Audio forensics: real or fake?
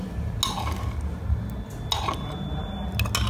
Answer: real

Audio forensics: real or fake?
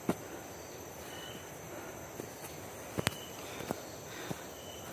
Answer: real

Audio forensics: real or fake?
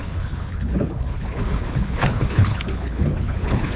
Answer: fake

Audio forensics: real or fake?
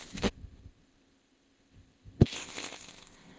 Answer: fake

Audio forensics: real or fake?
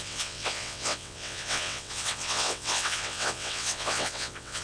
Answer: fake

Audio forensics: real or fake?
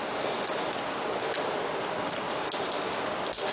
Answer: real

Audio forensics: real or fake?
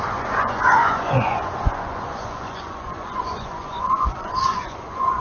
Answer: fake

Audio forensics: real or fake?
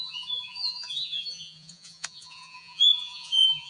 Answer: fake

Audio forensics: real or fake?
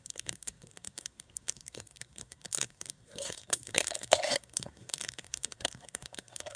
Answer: fake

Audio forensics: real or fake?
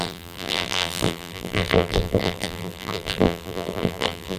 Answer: fake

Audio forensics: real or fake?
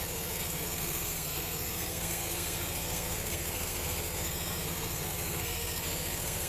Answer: fake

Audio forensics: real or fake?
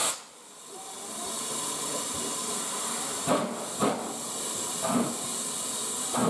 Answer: real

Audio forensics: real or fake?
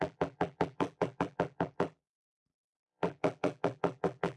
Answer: fake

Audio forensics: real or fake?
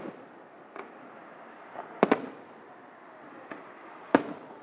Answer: real